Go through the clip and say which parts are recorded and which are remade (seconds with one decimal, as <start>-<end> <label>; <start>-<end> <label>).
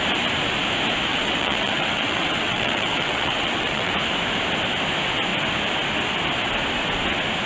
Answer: 0.0-1.1 recorded; 1.1-3.9 remade; 3.9-7.5 recorded